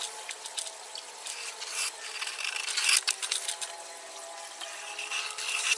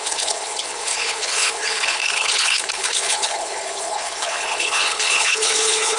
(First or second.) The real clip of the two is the first